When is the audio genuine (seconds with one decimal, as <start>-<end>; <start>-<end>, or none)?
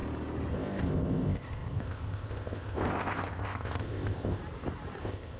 0.0-0.5; 4.4-5.0